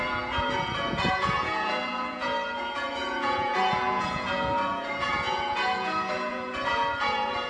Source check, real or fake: fake